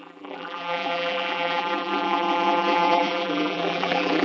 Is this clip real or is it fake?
fake